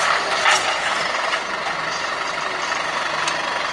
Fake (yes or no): no